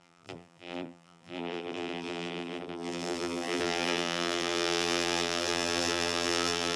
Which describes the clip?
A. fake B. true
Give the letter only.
A